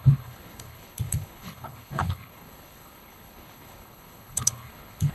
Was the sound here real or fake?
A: fake